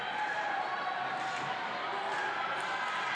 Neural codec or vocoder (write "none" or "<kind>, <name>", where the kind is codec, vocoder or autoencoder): none